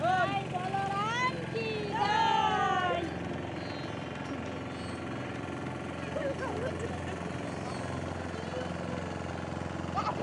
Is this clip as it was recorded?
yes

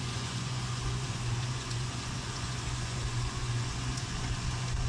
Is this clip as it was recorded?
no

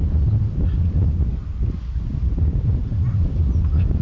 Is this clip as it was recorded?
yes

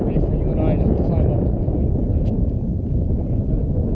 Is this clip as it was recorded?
yes